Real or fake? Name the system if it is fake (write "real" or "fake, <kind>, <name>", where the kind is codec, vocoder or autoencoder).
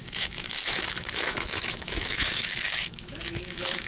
fake, autoencoder, DAC-VAE